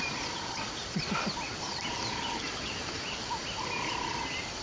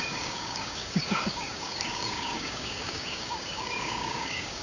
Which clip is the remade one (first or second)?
second